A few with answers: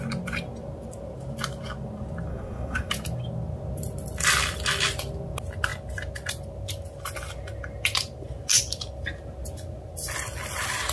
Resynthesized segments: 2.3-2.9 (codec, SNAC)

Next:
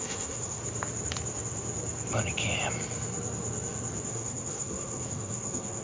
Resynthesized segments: 0.0-0.6 (codec, SNAC); 4.1-5.8

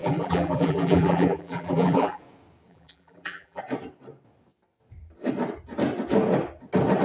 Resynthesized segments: 0.0-2.2 (vocoder, BigVGAN v2); 2.7-3.6

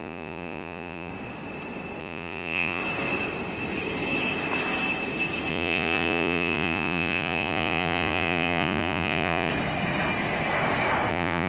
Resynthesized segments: 0.0-1.1 (vocoder, Vocos); 2.0-2.8; 5.5-9.5; 11.1-11.5